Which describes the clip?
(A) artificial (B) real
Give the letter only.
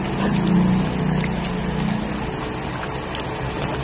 B